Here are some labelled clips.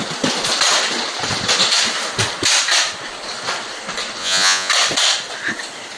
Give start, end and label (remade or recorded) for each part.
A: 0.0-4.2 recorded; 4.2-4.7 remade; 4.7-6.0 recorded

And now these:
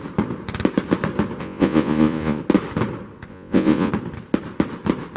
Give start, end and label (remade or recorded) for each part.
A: 0.0-1.4 recorded; 1.4-2.4 remade; 2.4-3.3 recorded; 3.3-3.9 remade; 3.9-5.2 recorded

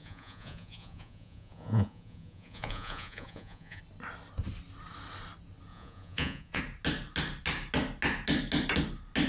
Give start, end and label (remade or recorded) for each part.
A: 0.0-3.8 remade; 3.8-5.7 recorded; 5.7-6.6 remade; 6.6-9.3 recorded

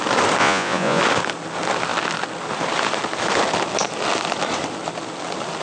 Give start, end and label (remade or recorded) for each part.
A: 0.0-0.4 recorded; 0.4-1.0 remade; 1.0-5.6 recorded

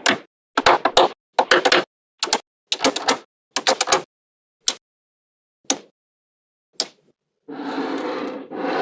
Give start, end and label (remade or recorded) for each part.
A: 0.0-8.8 recorded

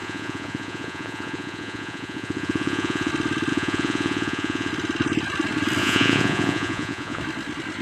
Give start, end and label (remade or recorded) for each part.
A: 0.0-3.1 remade; 3.1-3.5 recorded; 3.5-4.7 remade; 4.7-5.8 recorded; 5.8-7.2 remade; 7.2-7.8 recorded

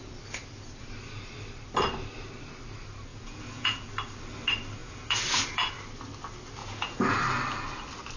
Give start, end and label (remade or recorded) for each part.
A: 0.0-3.1 recorded; 3.1-3.9 remade; 3.9-4.8 recorded; 4.8-5.7 remade; 5.7-6.6 recorded; 6.6-7.2 remade; 7.2-8.2 recorded